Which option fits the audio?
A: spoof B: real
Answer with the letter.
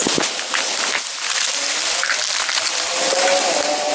B